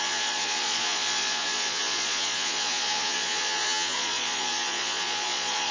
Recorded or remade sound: remade